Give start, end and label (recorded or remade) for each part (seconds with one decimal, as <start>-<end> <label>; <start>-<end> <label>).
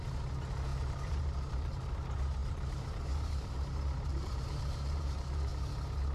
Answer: 0.0-0.7 recorded; 0.7-1.9 remade; 1.9-2.4 recorded; 2.4-5.5 remade; 5.5-6.1 recorded